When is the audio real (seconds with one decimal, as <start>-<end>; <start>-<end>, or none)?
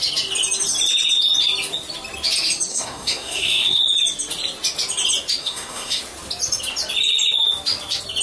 0.0-2.7; 3.8-5.4; 6.0-8.2